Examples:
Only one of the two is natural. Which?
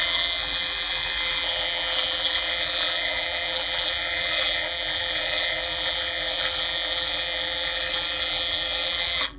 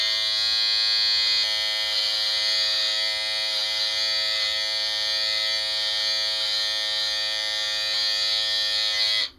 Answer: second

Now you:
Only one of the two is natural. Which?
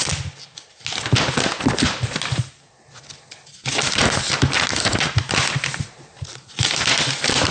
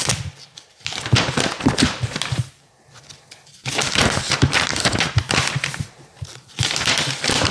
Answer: first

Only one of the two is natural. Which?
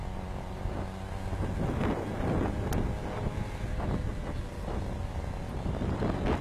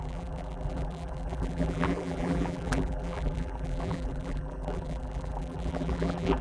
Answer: first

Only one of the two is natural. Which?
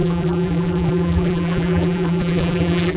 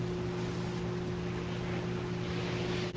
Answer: second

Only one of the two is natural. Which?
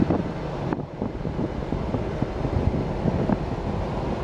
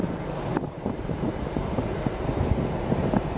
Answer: first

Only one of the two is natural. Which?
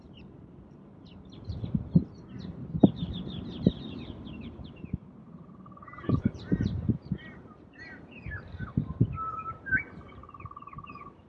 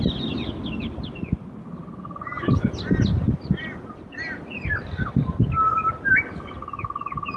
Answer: second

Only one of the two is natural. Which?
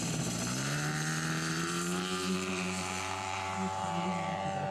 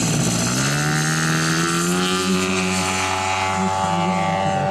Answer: second